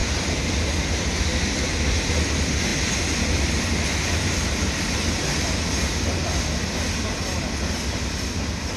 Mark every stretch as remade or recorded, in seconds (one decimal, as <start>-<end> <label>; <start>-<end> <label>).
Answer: 0.0-8.8 recorded